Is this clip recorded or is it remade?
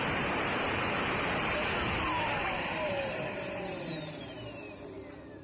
remade